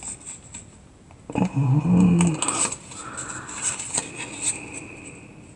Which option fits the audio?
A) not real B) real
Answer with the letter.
B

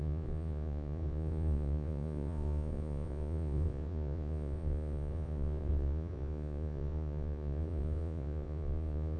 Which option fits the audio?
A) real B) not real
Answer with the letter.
B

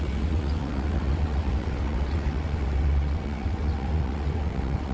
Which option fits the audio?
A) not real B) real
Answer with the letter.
A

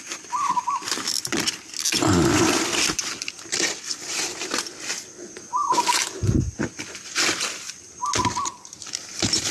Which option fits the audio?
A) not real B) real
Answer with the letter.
B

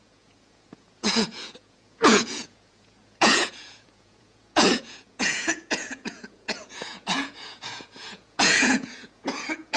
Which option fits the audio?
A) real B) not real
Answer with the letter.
B